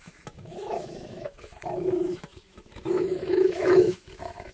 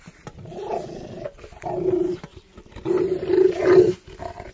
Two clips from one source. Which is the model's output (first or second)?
first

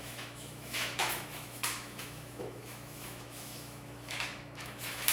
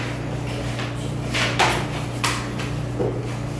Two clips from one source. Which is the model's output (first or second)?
first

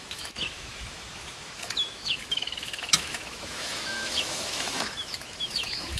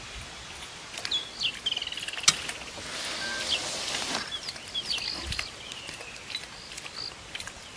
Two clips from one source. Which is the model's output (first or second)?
first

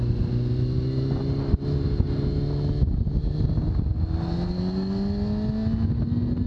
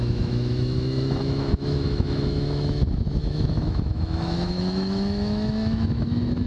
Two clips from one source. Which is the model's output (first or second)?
second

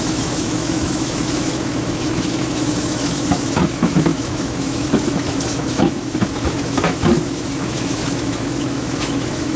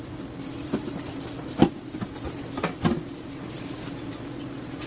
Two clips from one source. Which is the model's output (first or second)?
first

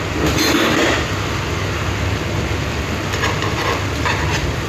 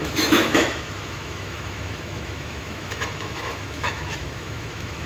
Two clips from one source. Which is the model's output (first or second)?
second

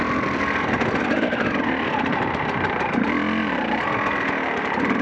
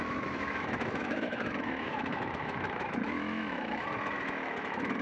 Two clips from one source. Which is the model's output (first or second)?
second